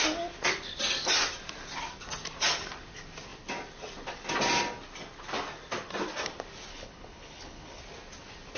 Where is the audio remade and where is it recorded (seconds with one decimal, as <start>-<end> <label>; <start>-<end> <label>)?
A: 0.0-6.7 recorded; 6.7-7.8 remade; 7.8-8.6 recorded